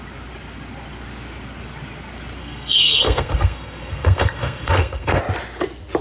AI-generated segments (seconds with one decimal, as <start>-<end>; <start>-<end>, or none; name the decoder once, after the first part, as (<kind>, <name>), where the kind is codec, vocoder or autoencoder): 2.4-5.2 (codec, SNAC)